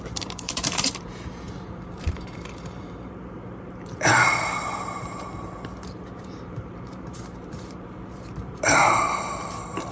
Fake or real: fake